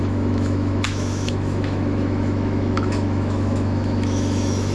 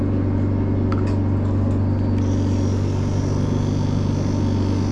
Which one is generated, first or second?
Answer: first